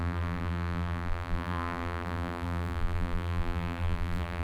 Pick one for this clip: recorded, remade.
remade